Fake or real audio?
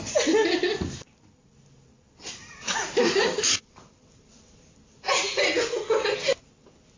real